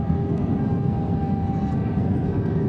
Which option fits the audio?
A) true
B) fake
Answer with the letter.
B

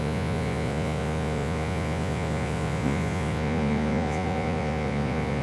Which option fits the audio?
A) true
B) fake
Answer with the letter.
B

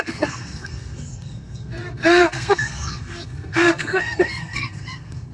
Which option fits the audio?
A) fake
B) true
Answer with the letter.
A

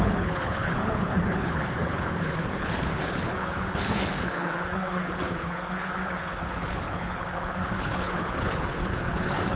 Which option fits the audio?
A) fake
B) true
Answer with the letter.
A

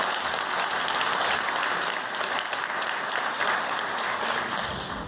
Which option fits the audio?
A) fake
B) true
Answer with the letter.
B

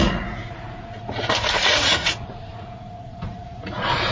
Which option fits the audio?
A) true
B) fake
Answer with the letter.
B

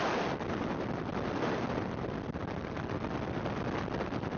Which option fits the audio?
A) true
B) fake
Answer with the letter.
A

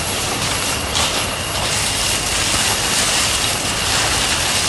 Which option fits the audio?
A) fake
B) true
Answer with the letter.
B